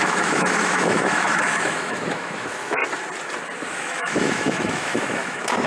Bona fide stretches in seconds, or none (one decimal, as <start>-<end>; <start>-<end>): 2.8-3.7